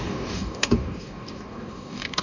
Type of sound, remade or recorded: remade